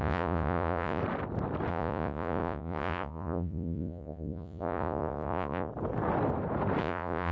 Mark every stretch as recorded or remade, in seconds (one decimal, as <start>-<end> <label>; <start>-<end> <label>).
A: 0.0-1.0 remade; 1.0-1.7 recorded; 1.7-5.7 remade; 5.7-6.8 recorded; 6.8-7.3 remade